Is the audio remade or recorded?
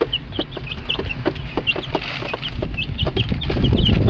recorded